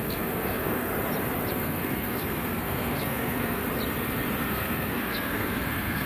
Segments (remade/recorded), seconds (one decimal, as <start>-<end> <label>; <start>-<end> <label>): 0.0-0.9 remade; 0.9-1.5 recorded; 1.5-3.6 remade; 3.6-4.5 recorded; 4.5-6.1 remade